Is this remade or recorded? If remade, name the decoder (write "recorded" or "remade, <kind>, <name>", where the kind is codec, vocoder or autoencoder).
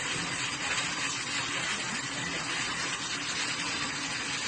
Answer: recorded